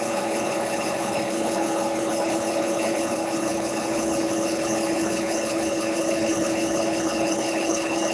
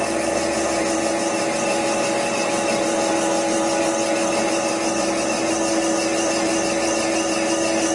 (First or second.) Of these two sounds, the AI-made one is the first